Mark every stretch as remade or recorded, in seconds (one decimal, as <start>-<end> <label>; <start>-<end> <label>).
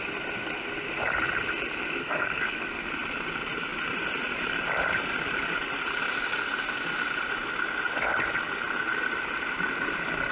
0.0-2.0 recorded; 2.0-2.9 remade; 2.9-10.3 recorded